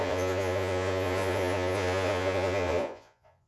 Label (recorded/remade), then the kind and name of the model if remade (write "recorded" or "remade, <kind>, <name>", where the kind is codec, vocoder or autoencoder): remade, vocoder, Vocos